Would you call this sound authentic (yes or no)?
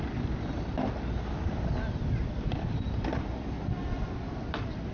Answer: yes